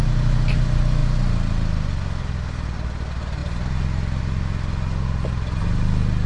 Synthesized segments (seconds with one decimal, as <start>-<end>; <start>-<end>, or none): none